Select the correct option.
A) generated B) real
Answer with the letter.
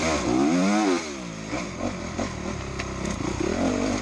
B